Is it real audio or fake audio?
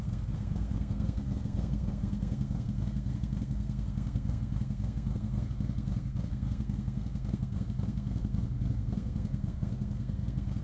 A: fake